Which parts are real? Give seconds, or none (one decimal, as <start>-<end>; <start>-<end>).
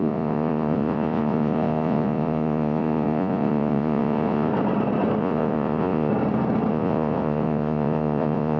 4.5-5.2; 6.1-6.7